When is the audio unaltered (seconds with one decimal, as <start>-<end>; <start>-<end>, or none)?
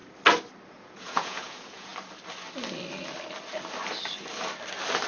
0.0-0.7; 1.9-5.1